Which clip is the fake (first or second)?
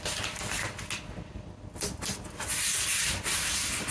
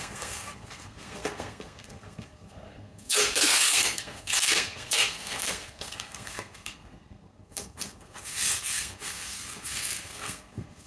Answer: second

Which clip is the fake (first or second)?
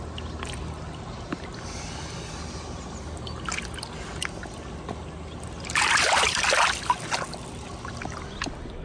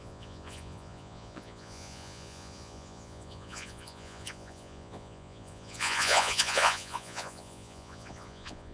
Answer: second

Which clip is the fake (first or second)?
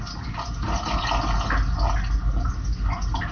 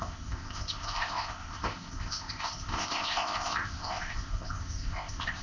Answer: second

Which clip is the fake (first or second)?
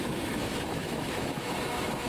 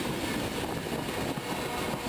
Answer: first